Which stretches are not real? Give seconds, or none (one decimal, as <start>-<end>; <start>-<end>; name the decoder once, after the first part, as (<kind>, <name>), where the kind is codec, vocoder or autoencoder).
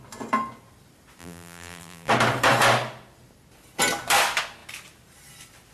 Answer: 1.2-2.1 (vocoder, BigVGAN v2)